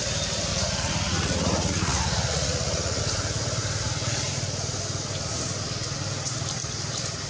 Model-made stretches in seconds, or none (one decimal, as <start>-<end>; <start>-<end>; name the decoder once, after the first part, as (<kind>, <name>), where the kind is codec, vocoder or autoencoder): 0.5-3.0 (vocoder, Vocos)